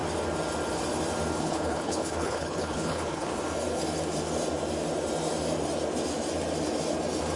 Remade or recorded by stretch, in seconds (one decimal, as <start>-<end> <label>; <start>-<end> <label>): 0.0-1.4 recorded; 1.4-3.3 remade; 3.3-7.4 recorded